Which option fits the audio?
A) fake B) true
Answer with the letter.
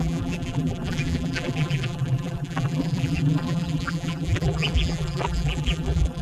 A